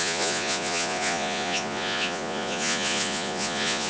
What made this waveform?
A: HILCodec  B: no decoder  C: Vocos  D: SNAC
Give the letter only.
C